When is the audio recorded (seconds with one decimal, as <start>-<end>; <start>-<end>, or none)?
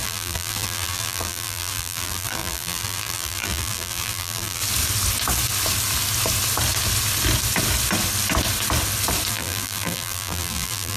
4.6-9.3